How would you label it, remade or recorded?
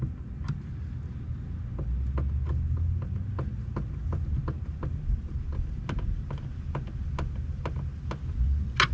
recorded